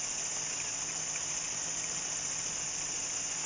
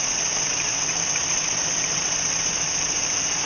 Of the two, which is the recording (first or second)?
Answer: first